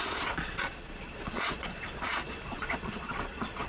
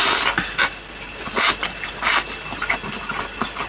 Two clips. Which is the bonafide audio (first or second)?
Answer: second